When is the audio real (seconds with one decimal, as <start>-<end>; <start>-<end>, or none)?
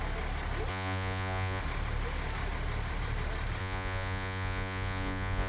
0.0-0.7; 1.6-3.6